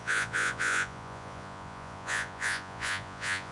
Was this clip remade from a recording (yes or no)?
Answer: yes